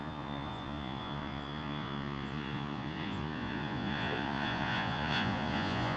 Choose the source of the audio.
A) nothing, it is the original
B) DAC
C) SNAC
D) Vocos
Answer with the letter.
D